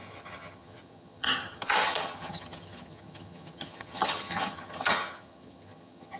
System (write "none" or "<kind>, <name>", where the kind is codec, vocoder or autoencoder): vocoder, HiFi-GAN